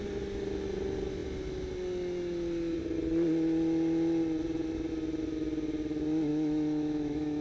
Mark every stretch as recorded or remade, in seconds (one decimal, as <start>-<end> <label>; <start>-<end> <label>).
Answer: 0.0-6.3 recorded; 6.3-7.4 remade